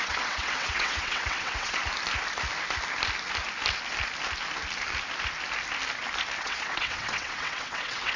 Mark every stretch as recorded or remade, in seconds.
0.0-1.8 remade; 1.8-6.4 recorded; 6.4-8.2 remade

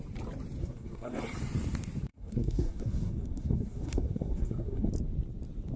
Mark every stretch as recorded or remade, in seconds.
0.0-0.6 recorded; 0.6-1.2 remade; 1.2-2.1 recorded; 2.1-4.9 remade; 4.9-5.8 recorded